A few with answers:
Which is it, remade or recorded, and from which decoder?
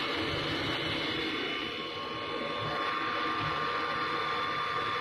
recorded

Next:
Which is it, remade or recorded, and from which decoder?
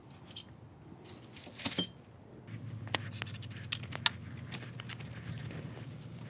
recorded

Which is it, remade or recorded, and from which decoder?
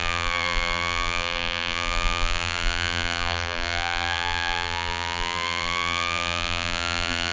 remade, vocoder, BigVGAN v2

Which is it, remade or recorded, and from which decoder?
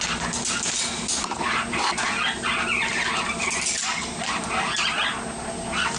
recorded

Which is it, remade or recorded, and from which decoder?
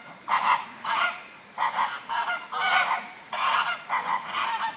remade, vocoder, Vocos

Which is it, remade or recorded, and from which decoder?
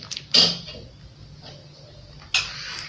recorded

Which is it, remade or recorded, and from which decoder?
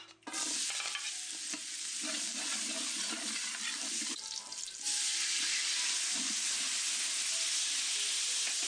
recorded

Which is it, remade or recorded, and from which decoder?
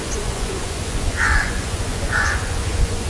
remade, vocoder, Vocos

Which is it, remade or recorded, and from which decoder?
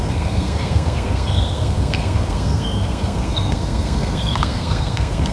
remade, codec, SNAC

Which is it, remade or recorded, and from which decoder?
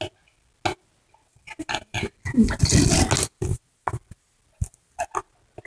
recorded